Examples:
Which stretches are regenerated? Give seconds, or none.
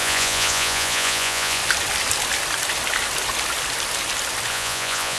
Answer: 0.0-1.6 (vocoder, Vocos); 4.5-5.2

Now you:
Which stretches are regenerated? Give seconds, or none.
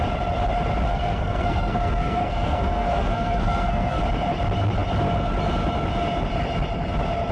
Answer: 0.9-4.0 (codec, SNAC)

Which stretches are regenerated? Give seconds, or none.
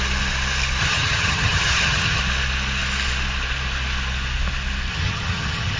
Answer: 0.8-2.2 (vocoder, HiFi-GAN); 4.9-5.8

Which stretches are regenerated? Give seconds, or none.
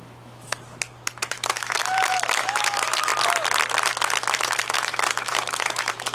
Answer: 0.0-0.5 (autoencoder, DAC-VAE); 1.3-3.1; 4.4-6.1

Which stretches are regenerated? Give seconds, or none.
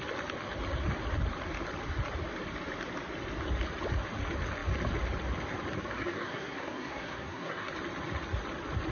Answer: 5.8-7.7 (codec, SNAC)